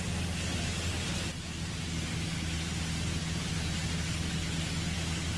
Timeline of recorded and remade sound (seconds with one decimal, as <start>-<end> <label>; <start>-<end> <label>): 0.0-5.4 recorded